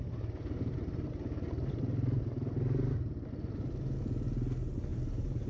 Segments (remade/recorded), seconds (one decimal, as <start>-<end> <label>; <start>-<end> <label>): 0.0-4.9 recorded; 4.9-5.5 remade